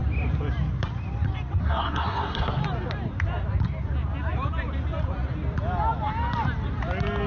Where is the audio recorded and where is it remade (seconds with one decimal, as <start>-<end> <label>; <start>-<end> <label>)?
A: 0.0-1.6 recorded; 1.6-2.6 remade; 2.6-7.3 recorded